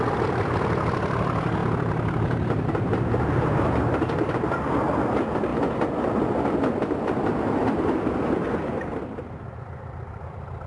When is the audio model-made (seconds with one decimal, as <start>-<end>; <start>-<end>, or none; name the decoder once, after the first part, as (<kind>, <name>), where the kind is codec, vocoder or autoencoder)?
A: 0.0-1.6 (vocoder, BigVGAN v2); 4.2-8.9; 9.4-10.7